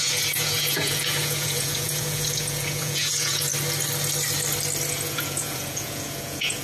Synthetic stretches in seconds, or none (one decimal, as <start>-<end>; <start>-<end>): 0.0-3.5; 4.9-6.6